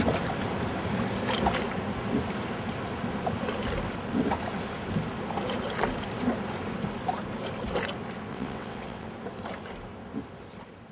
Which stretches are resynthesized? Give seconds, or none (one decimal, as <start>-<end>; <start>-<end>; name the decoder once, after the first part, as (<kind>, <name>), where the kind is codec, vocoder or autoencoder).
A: 8.3-9.1 (vocoder, WaveNeXt)